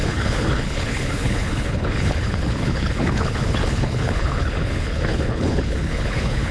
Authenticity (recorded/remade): remade